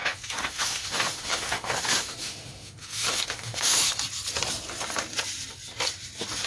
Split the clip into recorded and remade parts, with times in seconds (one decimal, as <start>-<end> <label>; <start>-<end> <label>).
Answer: 0.0-3.9 remade; 3.9-6.5 recorded